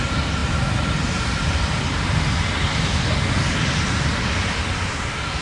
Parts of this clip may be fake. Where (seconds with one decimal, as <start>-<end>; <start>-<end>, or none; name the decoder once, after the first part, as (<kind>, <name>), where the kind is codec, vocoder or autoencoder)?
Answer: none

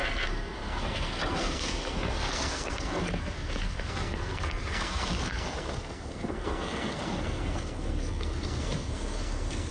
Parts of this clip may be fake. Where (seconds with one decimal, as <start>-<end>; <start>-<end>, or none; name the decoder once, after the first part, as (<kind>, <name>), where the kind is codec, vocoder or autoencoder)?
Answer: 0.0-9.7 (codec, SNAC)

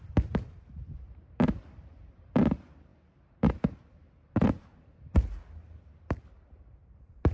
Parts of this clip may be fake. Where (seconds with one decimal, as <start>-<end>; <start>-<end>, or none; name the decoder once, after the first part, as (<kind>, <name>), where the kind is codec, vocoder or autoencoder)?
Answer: 0.0-5.1 (vocoder, BigVGAN v2); 5.8-7.3

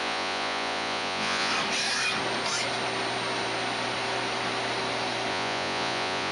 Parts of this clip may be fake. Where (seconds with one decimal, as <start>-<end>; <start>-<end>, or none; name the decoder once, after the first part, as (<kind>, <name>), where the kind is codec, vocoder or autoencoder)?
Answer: 0.0-1.5 (vocoder, Vocos); 5.3-6.3

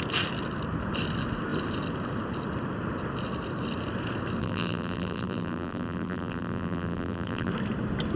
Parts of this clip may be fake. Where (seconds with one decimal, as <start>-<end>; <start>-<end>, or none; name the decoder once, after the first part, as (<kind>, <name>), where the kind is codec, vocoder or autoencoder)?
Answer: 4.4-7.5 (vocoder, BigVGAN v2)

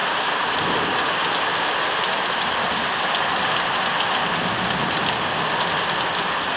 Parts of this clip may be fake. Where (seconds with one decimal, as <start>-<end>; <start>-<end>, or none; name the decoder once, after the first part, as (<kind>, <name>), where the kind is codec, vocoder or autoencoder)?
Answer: none

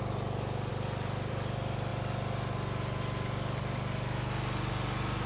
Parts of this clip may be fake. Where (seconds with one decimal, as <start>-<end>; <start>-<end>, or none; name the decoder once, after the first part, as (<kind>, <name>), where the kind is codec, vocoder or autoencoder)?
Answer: none